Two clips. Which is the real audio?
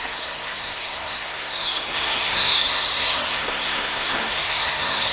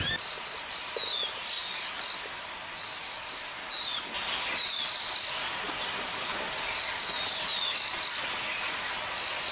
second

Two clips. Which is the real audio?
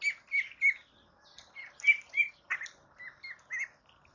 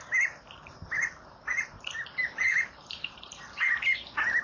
first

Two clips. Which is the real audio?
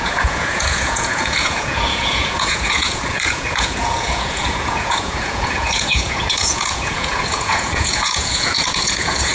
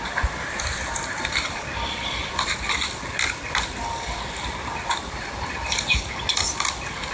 second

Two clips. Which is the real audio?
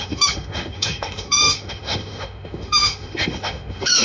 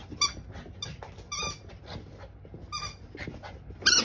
second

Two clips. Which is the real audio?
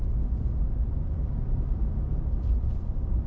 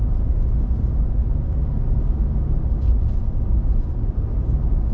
second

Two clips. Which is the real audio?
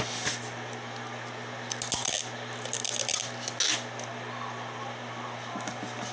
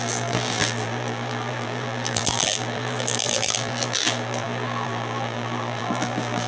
first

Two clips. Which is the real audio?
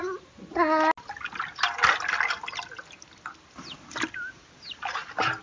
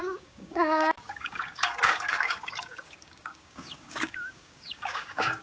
first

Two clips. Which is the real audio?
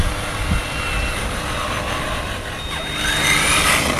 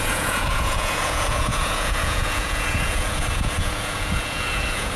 first